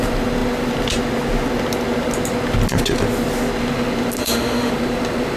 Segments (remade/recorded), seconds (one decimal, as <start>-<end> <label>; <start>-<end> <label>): 0.0-4.2 recorded; 4.2-4.7 remade; 4.7-5.4 recorded